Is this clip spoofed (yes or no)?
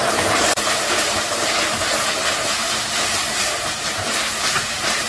yes